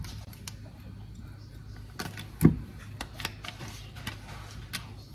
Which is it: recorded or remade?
recorded